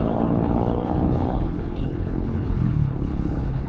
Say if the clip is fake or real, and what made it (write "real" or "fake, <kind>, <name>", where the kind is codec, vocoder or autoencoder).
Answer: fake, codec, HILCodec